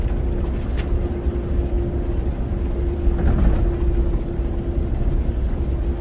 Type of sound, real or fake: real